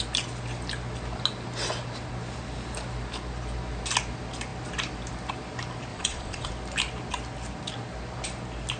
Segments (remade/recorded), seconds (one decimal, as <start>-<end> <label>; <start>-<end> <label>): 0.0-5.9 recorded; 5.9-6.5 remade; 6.5-8.8 recorded